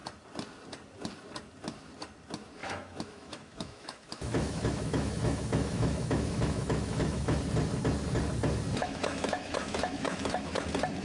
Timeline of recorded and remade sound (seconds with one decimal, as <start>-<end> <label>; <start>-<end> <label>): 0.0-2.6 recorded; 2.6-7.4 remade; 7.4-8.8 recorded; 8.8-10.6 remade; 10.6-11.0 recorded

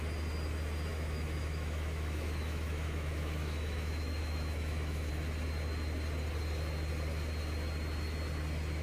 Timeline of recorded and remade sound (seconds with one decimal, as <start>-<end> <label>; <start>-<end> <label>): 0.0-0.9 recorded; 0.9-5.1 remade; 5.1-8.8 recorded

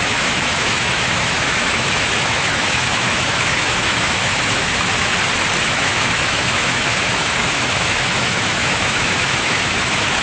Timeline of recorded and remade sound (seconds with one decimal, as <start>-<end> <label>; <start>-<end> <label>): 0.0-5.1 remade; 5.1-5.6 recorded; 5.6-10.2 remade

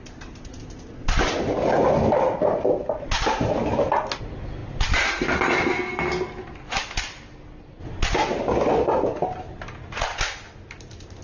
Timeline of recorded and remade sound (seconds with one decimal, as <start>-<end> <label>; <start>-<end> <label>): 0.0-11.2 recorded

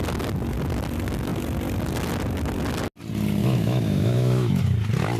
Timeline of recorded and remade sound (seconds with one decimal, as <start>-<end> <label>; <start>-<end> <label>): 0.0-3.4 recorded; 3.4-4.6 remade; 4.6-5.2 recorded